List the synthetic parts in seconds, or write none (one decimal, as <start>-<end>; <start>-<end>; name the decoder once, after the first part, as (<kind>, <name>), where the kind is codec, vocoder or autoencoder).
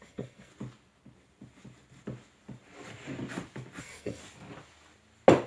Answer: 0.0-0.5 (codec, SNAC); 3.8-4.2